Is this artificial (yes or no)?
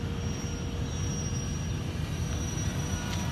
no